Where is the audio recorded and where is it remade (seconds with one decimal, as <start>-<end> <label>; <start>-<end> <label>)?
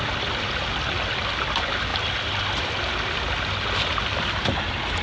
0.0-5.0 recorded